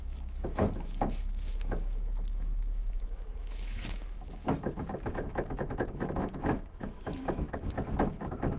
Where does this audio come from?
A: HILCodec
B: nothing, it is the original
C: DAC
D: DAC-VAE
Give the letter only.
D